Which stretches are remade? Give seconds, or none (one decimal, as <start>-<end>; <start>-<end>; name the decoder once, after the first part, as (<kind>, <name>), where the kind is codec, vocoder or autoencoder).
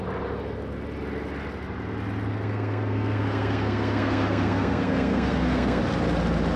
2.3-5.8 (codec, SNAC)